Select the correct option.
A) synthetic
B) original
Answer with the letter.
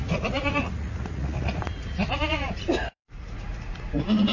A